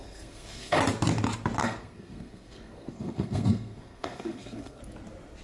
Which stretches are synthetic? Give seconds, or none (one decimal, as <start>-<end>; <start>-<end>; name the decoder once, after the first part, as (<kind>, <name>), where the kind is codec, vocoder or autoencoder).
0.0-0.8 (codec, SNAC); 1.6-4.8